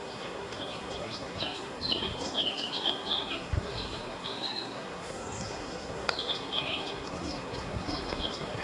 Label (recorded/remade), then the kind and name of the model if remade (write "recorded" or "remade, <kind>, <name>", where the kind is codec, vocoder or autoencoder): remade, codec, SNAC